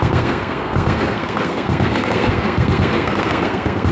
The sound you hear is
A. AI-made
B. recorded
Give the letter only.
A